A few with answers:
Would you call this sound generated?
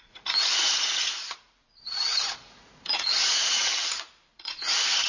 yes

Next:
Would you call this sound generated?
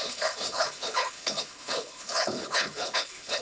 yes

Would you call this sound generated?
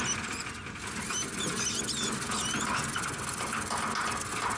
no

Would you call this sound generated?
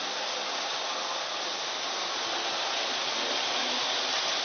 no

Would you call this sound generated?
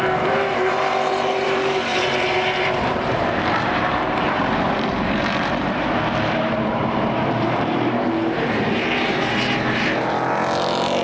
yes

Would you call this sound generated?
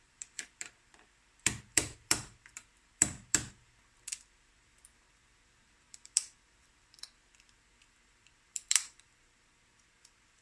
yes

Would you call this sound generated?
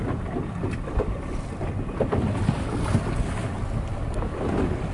no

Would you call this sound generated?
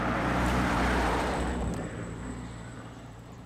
yes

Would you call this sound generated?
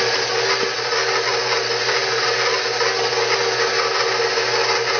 no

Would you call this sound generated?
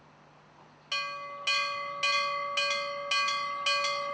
no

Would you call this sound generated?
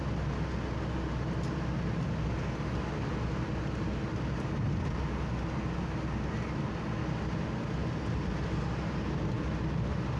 no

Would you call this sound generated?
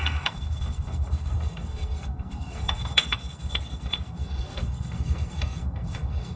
yes